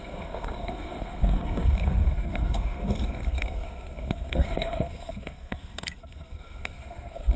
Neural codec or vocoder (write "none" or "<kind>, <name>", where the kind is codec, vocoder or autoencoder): codec, SNAC